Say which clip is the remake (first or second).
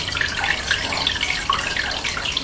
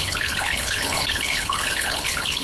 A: second